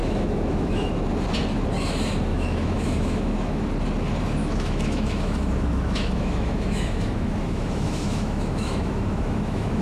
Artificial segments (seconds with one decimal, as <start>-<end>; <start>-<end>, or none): 0.0-0.9; 2.3-3.6; 4.4-9.8